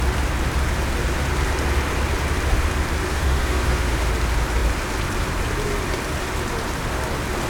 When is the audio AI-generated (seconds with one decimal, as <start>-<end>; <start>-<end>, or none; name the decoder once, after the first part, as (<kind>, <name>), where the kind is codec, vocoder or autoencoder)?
3.1-4.1 (autoencoder, DAC-VAE)